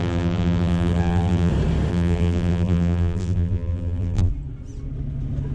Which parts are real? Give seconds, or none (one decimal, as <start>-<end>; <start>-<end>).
1.5-1.9; 4.3-5.5